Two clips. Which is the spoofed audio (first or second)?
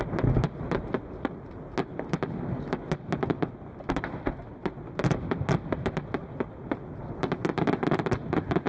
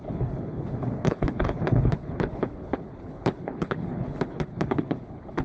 second